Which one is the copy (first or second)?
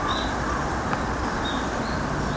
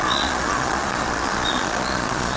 second